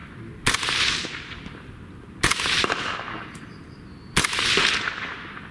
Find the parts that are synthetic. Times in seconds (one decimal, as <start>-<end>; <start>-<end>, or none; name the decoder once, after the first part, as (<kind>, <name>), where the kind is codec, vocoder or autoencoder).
none